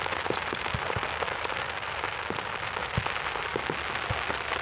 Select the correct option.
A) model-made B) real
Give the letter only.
B